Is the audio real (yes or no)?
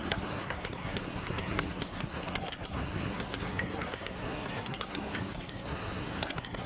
no